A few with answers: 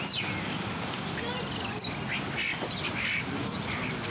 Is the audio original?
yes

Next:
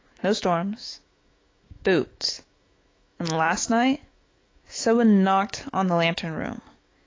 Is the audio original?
no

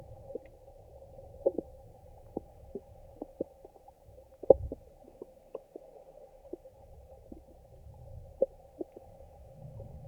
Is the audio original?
yes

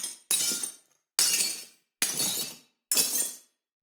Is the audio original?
yes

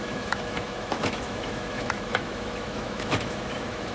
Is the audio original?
no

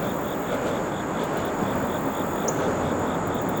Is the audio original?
yes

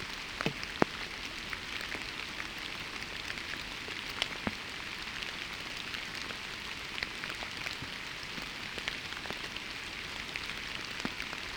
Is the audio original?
yes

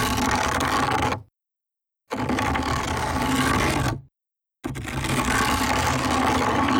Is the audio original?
yes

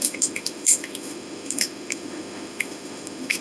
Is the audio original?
no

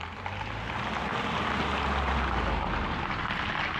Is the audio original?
yes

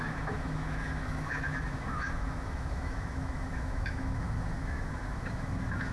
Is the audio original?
no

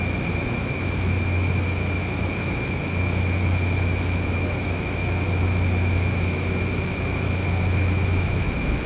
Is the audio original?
no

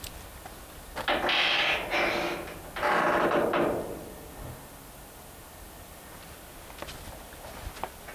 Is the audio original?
yes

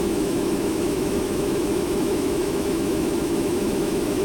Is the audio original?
no